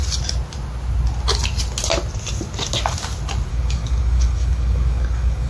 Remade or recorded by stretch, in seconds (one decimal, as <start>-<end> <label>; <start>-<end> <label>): 0.0-3.5 recorded; 3.5-5.5 remade